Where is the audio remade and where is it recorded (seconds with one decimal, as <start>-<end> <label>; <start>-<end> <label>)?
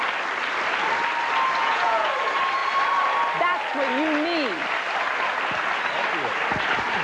0.0-1.6 recorded; 1.6-2.1 remade; 2.1-7.0 recorded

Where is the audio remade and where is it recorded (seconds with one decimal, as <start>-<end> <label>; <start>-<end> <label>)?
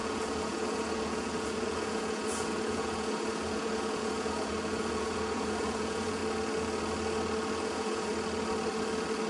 0.0-6.2 remade; 6.2-7.6 recorded; 7.6-8.1 remade; 8.1-9.3 recorded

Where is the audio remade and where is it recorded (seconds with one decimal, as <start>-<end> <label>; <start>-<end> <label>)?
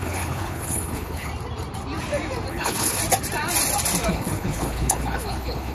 0.0-1.3 remade; 1.3-2.5 recorded; 2.5-3.0 remade; 3.0-4.1 recorded; 4.1-5.7 remade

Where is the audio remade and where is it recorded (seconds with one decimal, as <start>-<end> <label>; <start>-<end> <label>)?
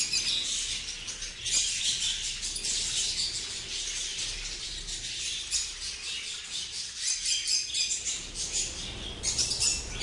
0.0-10.0 recorded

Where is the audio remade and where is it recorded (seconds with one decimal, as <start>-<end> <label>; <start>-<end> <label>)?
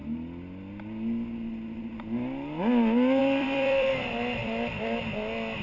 0.0-3.2 recorded; 3.2-3.9 remade; 3.9-4.4 recorded; 4.4-5.0 remade; 5.0-5.6 recorded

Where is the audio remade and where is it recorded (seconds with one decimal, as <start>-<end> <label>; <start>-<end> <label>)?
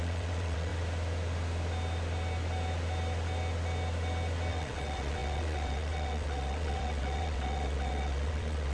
0.0-0.7 remade; 0.7-4.5 recorded; 4.5-8.7 remade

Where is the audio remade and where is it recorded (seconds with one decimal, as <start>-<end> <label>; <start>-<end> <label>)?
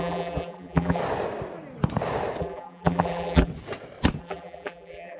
0.0-1.0 remade; 1.0-2.4 recorded; 2.4-3.5 remade; 3.5-4.2 recorded; 4.2-5.2 remade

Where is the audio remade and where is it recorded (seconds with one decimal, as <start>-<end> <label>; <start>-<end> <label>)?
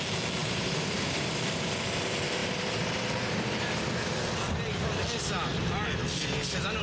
0.0-0.4 recorded; 0.4-1.6 remade; 1.6-2.4 recorded; 2.4-3.9 remade; 3.9-6.8 recorded